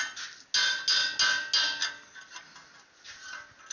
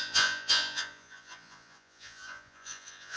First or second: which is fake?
second